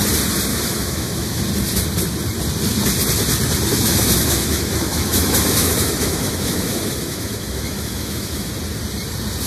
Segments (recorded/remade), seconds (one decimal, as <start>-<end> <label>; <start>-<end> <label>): 0.0-0.5 recorded; 0.5-1.4 remade; 1.4-3.7 recorded; 3.7-8.5 remade; 8.5-9.5 recorded